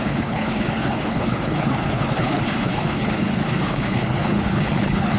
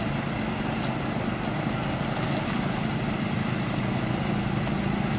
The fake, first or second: first